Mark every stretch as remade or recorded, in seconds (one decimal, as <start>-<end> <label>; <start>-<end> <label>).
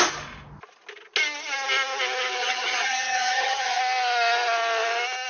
0.0-2.4 recorded; 2.4-3.8 remade; 3.8-5.3 recorded